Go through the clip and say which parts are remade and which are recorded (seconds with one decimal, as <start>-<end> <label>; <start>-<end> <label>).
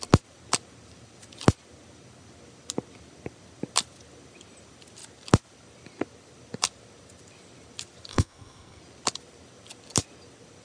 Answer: 0.0-8.1 recorded; 8.1-8.8 remade; 8.8-10.6 recorded